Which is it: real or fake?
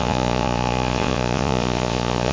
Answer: fake